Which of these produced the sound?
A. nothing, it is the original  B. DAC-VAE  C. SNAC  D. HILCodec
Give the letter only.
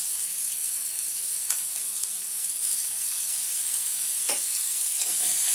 C